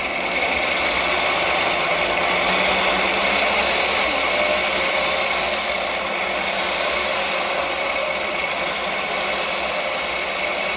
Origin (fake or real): real